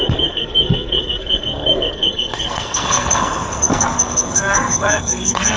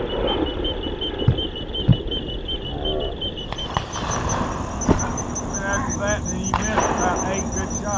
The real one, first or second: second